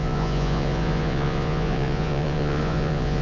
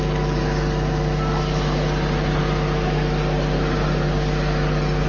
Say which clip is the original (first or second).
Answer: second